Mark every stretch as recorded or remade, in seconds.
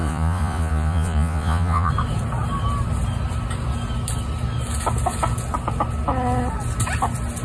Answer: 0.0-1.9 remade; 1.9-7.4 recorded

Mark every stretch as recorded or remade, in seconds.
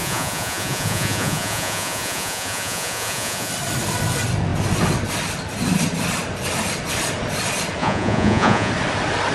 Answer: 0.0-3.5 remade; 3.5-7.8 recorded; 7.8-8.7 remade; 8.7-9.3 recorded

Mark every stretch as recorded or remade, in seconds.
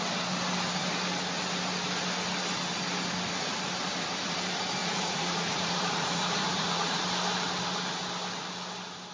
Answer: 0.0-4.8 recorded; 4.8-7.0 remade; 7.0-9.1 recorded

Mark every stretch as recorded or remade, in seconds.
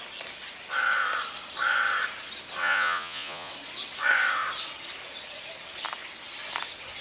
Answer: 0.0-2.6 recorded; 2.6-3.5 remade; 3.5-7.0 recorded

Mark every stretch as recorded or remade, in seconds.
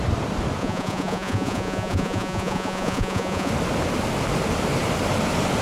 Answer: 0.0-0.6 recorded; 0.6-3.5 remade; 3.5-5.6 recorded